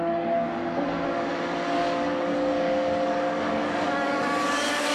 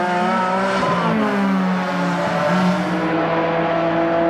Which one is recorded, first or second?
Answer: second